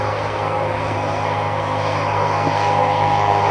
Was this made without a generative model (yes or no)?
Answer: no